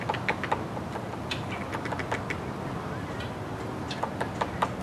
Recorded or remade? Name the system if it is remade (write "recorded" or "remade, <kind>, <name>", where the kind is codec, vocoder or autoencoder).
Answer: recorded